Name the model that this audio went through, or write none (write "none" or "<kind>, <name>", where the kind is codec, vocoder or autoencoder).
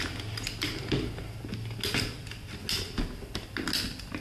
none